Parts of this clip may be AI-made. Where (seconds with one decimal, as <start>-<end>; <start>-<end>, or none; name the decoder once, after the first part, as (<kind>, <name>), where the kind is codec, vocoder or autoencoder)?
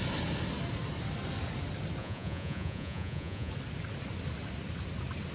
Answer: 2.0-3.5 (vocoder, Vocos)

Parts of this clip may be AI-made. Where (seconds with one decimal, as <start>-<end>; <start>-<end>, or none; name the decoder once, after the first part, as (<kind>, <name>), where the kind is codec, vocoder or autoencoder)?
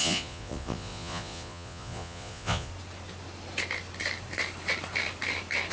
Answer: 0.0-2.7 (vocoder, Vocos)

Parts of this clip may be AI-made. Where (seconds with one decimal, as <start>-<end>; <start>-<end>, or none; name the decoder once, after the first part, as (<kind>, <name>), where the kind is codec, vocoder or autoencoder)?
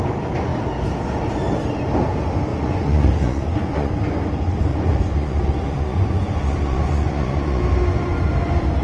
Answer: 2.5-3.9 (vocoder, Vocos); 4.7-7.6